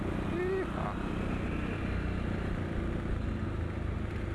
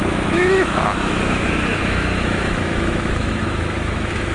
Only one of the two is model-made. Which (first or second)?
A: second